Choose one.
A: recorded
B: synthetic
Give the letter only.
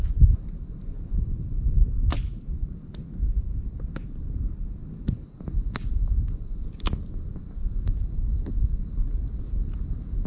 A